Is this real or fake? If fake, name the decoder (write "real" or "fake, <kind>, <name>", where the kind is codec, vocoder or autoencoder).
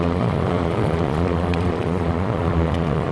fake, vocoder, Vocos